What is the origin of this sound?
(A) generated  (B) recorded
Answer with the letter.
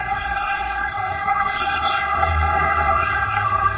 A